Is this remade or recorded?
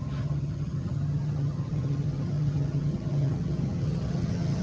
remade